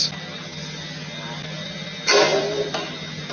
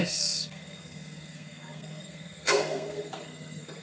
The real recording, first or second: first